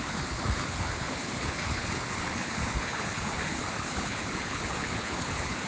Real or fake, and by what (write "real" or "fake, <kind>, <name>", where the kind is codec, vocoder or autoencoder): fake, codec, HILCodec